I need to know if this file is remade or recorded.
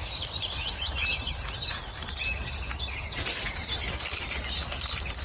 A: recorded